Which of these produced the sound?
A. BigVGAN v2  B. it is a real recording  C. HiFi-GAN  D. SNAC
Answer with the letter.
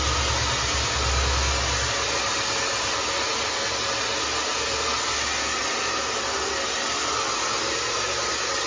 B